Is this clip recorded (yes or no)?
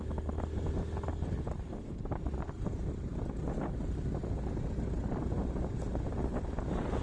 yes